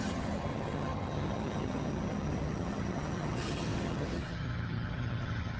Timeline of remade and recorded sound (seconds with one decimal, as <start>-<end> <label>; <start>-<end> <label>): 0.0-5.6 remade